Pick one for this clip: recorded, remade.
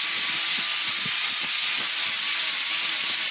recorded